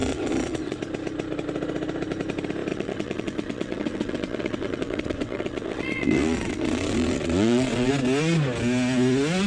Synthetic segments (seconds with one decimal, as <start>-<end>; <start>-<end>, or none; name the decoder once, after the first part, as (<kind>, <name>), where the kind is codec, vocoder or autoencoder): 0.0-0.8 (vocoder, WaveNeXt); 2.7-7.9